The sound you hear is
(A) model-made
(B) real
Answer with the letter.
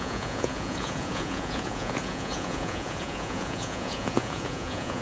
A